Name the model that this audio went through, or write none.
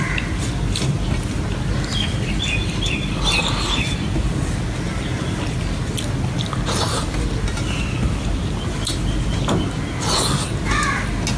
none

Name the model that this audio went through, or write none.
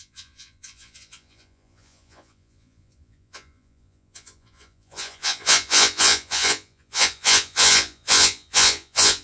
vocoder, Vocos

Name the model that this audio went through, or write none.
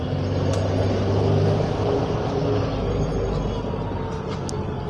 none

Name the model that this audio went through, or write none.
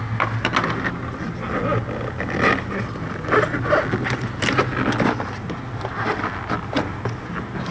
none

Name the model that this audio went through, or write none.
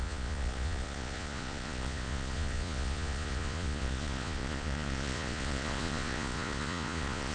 vocoder, Vocos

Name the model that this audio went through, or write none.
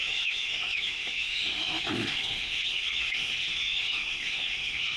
autoencoder, DAC-VAE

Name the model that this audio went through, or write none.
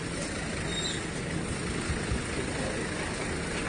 none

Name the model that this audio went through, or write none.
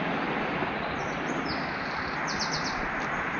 none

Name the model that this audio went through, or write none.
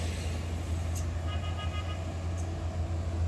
none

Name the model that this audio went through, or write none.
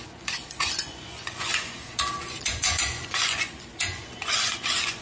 vocoder, Vocos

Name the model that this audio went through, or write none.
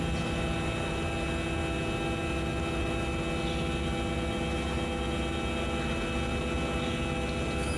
none